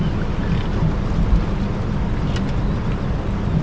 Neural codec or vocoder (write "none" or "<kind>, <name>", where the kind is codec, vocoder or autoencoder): none